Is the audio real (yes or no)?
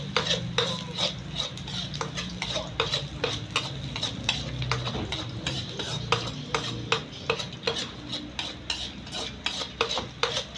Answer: yes